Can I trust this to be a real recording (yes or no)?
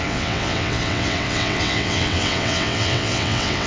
no